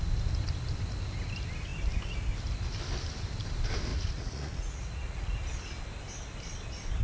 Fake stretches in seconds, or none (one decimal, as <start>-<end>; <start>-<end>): 3.9-5.4